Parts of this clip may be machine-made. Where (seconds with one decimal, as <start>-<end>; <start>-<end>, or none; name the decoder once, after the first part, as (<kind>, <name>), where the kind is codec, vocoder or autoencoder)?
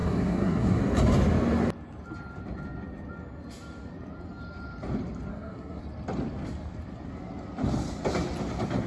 0.0-0.8 (codec, SNAC); 5.3-5.8